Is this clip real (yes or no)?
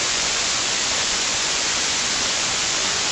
no